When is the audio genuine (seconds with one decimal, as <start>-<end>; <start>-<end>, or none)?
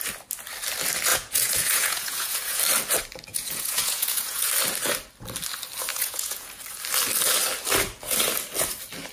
0.0-1.1; 2.6-3.3; 4.5-5.9; 6.6-9.1